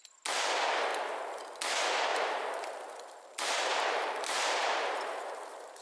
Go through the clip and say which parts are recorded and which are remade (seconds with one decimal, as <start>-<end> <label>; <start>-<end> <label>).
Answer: 0.0-2.1 recorded; 2.1-5.8 remade